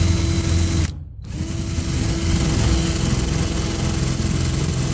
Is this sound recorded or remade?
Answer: recorded